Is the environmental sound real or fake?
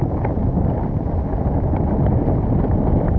real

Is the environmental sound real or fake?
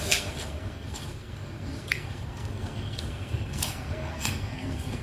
fake